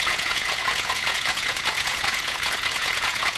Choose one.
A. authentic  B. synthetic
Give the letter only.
B